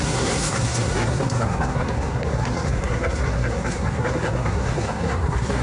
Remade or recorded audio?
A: remade